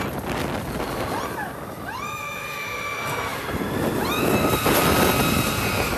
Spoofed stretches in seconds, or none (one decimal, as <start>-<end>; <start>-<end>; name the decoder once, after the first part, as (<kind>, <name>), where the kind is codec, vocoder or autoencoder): 3.3-4.0 (vocoder, BigVGAN v2)